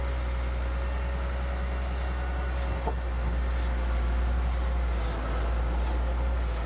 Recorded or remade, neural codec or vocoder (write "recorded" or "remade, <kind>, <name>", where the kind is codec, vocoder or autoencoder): recorded